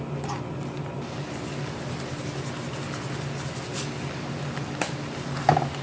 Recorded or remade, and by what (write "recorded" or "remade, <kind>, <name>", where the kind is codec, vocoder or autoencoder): recorded